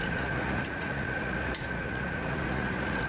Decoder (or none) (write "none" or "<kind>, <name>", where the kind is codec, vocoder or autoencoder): vocoder, Vocos